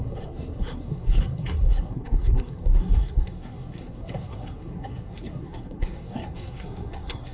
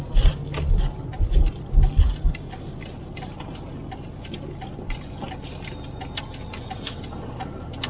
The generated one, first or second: first